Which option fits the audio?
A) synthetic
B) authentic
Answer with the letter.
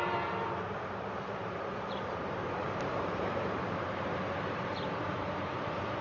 A